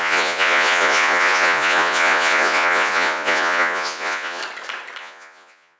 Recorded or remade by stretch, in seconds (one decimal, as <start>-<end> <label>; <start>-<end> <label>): 0.0-4.4 remade; 4.4-5.0 recorded; 5.0-5.8 remade